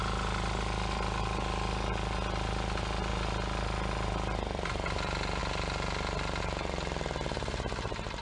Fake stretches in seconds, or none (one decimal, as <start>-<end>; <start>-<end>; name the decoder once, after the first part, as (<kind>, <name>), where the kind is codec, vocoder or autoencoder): none